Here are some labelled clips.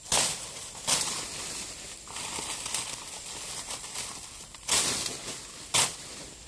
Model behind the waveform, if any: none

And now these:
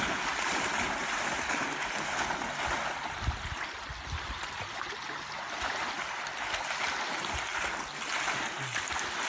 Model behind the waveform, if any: none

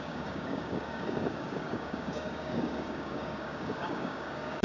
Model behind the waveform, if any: codec, DAC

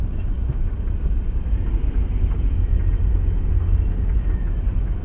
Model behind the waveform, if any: none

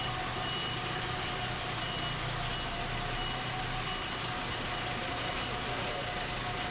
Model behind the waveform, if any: none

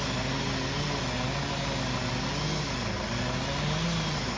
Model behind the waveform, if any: none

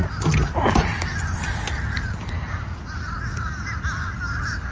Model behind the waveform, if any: none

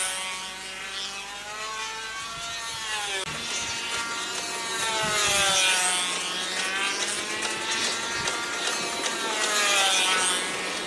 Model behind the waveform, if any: none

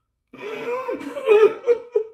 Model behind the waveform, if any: codec, SNAC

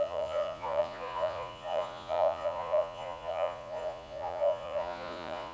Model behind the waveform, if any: vocoder, Vocos